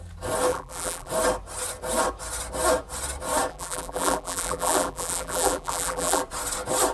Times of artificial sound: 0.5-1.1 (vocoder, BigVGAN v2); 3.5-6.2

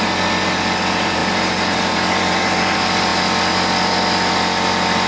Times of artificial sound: 0.0-3.1 (vocoder, BigVGAN v2)

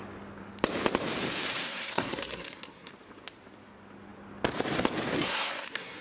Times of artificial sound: 1.6-2.9 (codec, SNAC); 5.2-6.0

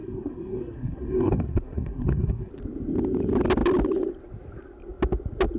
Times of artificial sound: 0.0-2.5 (codec, SNAC)